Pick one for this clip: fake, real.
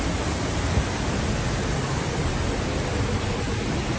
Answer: real